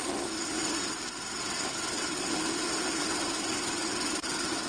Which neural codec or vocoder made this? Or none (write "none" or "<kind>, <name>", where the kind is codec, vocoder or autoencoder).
none